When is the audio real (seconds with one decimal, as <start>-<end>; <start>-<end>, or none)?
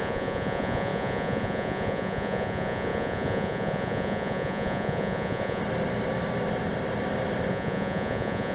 5.6-7.5